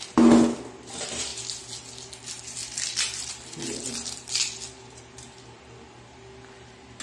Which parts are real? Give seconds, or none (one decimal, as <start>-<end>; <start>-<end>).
0.0-7.0